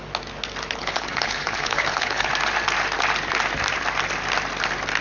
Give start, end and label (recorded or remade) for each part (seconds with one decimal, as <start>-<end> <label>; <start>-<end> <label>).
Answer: 0.0-0.8 recorded; 0.8-2.3 remade; 2.3-5.0 recorded